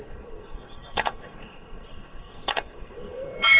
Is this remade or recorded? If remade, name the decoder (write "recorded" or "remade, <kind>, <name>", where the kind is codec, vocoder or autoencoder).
remade, codec, SNAC